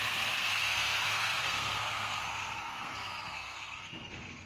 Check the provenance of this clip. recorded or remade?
remade